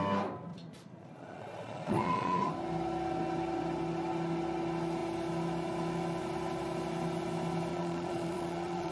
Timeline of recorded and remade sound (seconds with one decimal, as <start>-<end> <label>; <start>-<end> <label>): 0.0-0.5 recorded; 0.5-2.5 remade; 2.5-7.7 recorded; 7.7-8.9 remade